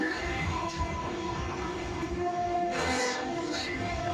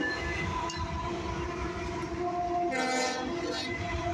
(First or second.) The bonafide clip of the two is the second